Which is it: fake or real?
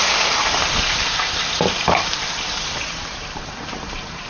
fake